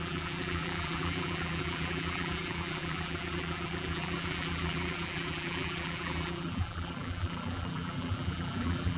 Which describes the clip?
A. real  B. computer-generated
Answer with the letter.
B